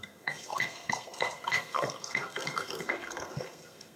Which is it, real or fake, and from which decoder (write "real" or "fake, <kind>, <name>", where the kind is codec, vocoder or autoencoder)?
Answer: fake, codec, SNAC